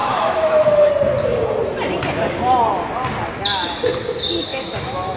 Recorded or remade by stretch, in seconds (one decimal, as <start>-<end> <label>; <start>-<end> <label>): 0.0-0.9 remade; 0.9-4.5 recorded; 4.5-5.2 remade